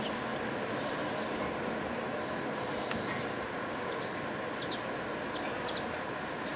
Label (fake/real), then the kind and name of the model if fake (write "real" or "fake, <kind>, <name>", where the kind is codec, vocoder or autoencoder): real